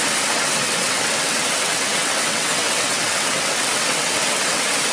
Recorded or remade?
remade